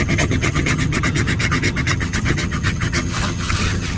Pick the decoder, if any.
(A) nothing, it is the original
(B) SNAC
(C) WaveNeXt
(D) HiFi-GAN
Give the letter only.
D